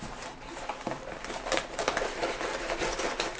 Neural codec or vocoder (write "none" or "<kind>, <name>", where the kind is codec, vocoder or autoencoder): vocoder, BigVGAN v2